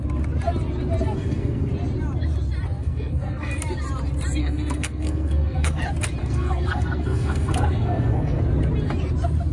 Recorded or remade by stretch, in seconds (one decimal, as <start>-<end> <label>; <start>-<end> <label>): 0.0-1.0 recorded; 1.0-1.7 remade; 1.7-2.8 recorded; 2.8-3.5 remade; 3.5-4.4 recorded; 4.4-5.8 remade; 5.8-6.2 recorded; 6.2-8.4 remade; 8.4-9.5 recorded